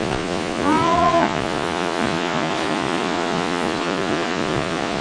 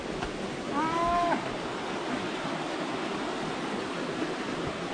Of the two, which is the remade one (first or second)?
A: first